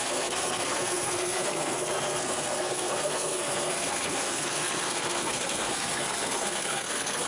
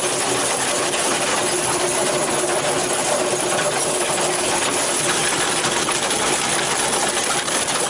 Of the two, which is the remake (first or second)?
first